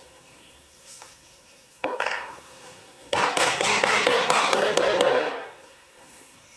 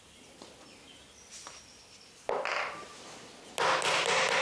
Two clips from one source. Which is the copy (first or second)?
first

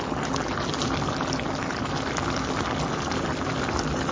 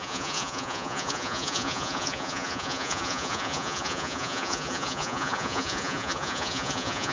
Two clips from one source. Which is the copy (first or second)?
second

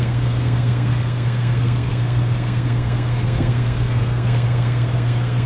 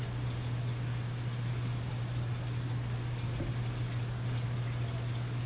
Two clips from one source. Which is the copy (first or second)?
first